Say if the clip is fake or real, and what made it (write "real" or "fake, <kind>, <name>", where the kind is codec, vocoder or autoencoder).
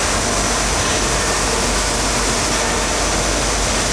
real